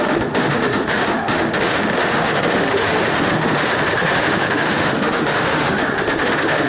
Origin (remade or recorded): remade